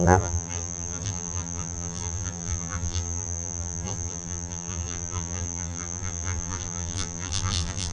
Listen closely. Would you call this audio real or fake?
fake